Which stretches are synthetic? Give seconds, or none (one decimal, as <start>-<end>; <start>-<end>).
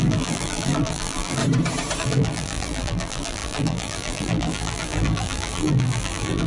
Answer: 0.0-1.4; 2.0-6.5